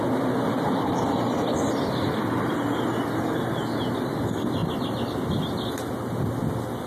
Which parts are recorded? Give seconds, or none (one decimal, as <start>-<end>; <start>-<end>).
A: 0.0-6.9